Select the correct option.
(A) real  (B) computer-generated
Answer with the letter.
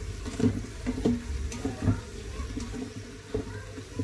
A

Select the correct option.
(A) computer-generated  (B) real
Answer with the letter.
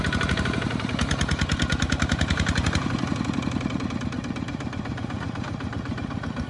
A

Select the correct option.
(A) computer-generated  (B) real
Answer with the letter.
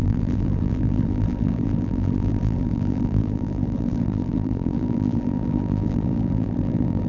A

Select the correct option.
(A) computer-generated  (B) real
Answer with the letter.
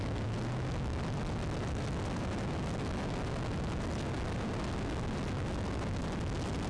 B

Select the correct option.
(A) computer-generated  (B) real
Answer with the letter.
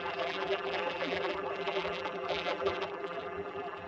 A